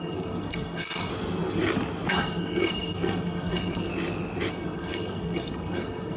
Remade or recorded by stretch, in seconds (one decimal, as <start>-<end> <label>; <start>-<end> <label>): 0.0-1.1 remade; 1.1-2.1 recorded; 2.1-3.9 remade; 3.9-4.5 recorded; 4.5-6.2 remade